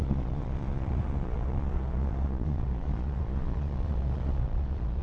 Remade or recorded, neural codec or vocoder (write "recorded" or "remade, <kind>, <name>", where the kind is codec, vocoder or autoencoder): remade, vocoder, Vocos